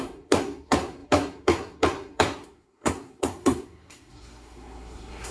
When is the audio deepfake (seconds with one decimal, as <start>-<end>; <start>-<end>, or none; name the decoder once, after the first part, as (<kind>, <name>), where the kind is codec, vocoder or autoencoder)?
0.0-5.3 (codec, SNAC)